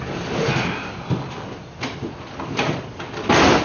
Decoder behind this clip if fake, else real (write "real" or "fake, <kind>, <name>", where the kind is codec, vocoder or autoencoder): real